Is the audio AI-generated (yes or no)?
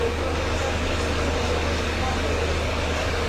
yes